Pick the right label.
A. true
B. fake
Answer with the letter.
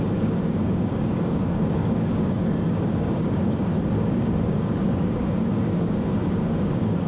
B